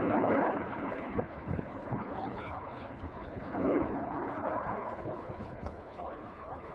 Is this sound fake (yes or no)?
yes